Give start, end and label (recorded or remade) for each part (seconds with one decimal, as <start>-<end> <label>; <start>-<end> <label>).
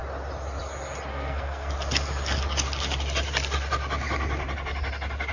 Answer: 0.0-1.1 recorded; 1.1-1.7 remade; 1.7-5.3 recorded